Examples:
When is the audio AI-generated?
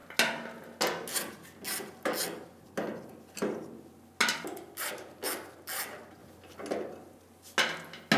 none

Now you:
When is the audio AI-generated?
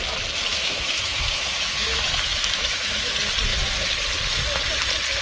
0.5-3.1 (autoencoder, DAC-VAE)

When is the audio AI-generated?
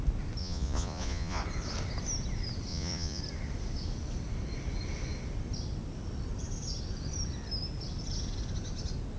0.4-1.4 (vocoder, Vocos); 2.7-3.2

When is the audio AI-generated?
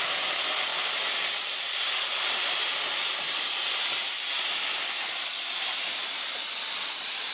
0.7-1.5 (vocoder, BigVGAN v2); 2.1-2.8